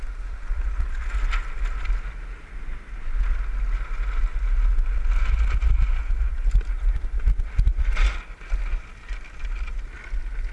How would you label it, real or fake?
real